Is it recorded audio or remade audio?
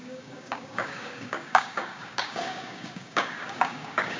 remade